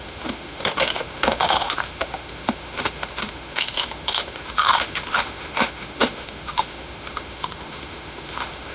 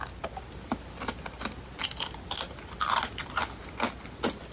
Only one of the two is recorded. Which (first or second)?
second